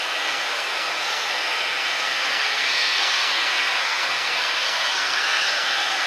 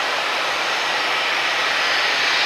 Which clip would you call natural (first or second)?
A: second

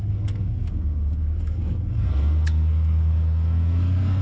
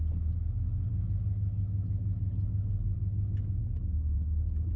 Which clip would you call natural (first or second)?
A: second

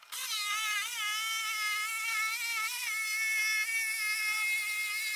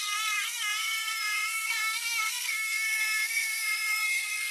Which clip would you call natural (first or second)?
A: first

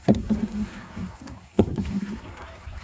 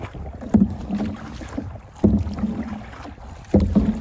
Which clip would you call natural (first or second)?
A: second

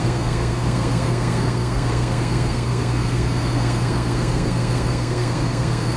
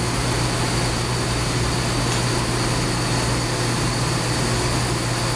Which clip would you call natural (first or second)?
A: second